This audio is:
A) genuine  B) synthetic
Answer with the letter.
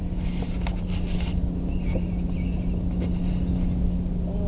A